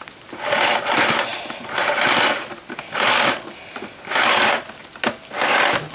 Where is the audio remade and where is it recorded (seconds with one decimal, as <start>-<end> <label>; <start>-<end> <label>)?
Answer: 0.0-5.9 recorded